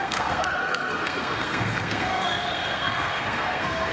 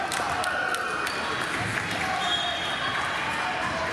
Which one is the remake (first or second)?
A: first